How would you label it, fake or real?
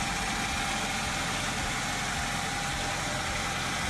real